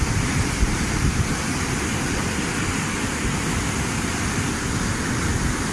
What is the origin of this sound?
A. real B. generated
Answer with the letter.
A